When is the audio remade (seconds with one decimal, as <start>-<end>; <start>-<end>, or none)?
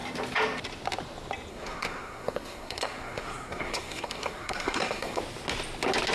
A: 1.5-5.2